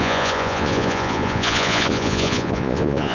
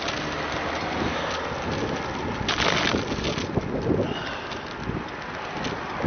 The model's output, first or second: first